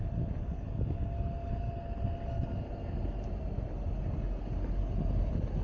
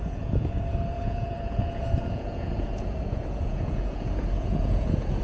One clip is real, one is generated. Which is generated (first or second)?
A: second